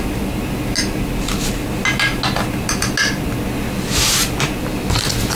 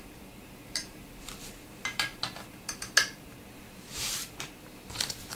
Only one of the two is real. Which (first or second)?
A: first